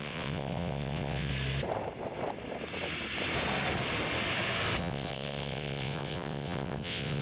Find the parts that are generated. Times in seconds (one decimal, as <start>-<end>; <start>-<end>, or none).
0.0-1.3; 4.8-7.2